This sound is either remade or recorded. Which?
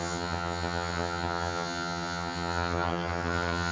remade